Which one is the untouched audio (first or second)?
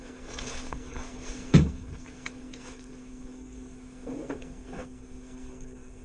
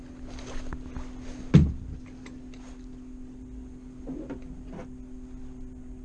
second